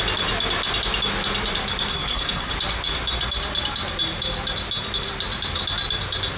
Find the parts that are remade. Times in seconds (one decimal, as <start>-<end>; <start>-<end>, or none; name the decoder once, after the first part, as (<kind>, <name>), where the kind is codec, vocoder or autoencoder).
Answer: 1.9-2.5 (codec, SNAC)

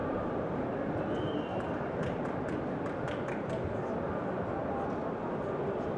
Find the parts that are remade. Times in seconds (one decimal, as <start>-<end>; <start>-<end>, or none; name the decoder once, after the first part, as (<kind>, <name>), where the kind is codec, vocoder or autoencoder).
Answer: 0.0-0.6 (vocoder, BigVGAN v2); 1.5-2.6

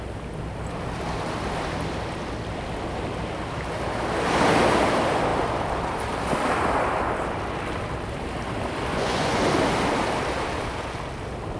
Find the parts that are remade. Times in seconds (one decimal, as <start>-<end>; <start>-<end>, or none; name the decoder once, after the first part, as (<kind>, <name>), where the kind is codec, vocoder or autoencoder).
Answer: 8.9-9.5 (vocoder, Vocos)

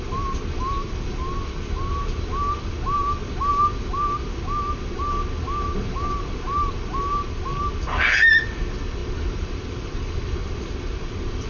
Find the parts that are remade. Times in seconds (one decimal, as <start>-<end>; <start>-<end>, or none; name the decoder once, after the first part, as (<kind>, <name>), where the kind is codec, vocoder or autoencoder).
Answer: none

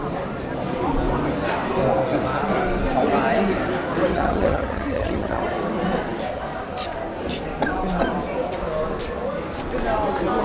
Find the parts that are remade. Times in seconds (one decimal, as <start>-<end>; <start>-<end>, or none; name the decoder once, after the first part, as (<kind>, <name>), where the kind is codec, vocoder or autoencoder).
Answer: 4.1-5.4 (vocoder, HiFi-GAN)

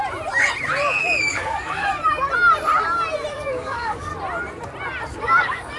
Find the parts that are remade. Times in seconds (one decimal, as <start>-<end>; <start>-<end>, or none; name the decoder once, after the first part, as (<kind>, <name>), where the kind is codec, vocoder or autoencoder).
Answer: 1.0-1.9 (codec, DAC); 3.3-4.1; 5.2-5.8

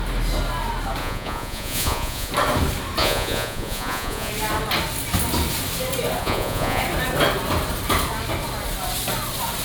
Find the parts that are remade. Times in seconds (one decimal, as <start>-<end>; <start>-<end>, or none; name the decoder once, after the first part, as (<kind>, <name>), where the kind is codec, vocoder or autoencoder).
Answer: 1.0-2.3 (vocoder, Vocos); 3.0-4.3; 6.2-6.8